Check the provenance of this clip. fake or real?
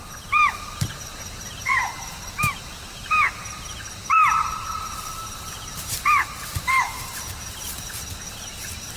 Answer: fake